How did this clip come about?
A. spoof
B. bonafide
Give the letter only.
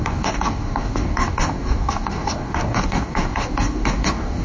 A